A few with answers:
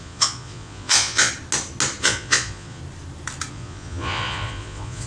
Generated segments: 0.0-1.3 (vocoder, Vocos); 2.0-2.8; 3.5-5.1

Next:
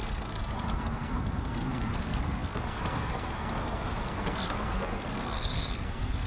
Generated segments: 0.0-6.3 (codec, SNAC)

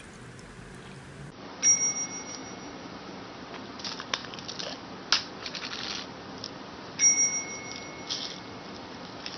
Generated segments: none

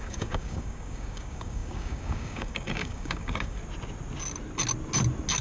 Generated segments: 0.0-3.6 (codec, DAC)